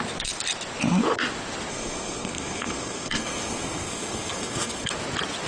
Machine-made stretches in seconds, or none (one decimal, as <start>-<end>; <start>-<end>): 1.7-4.9